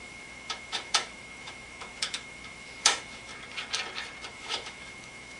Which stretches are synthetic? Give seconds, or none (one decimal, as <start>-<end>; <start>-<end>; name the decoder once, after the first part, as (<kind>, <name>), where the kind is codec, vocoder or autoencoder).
0.0-3.3 (autoencoder, DAC-VAE); 4.3-5.4